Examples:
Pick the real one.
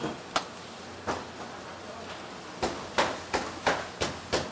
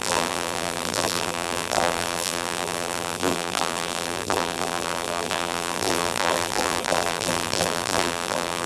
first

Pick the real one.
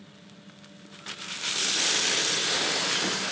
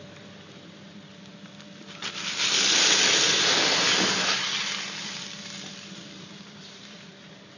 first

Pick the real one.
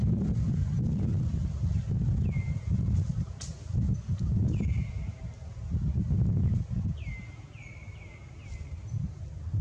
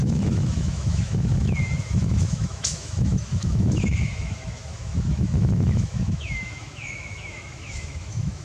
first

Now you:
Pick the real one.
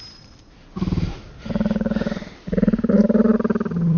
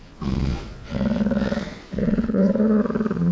first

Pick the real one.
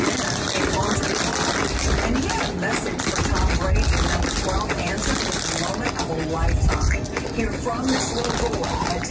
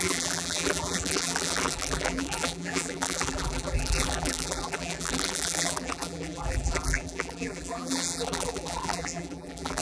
first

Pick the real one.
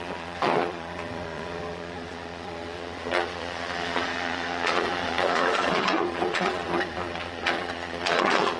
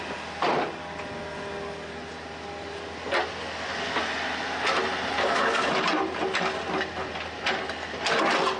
second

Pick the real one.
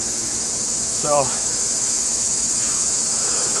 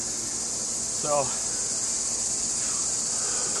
second